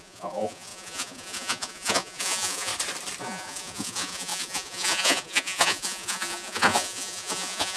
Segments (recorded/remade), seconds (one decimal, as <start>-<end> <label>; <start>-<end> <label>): 0.0-2.7 remade; 2.7-3.2 recorded; 3.2-7.8 remade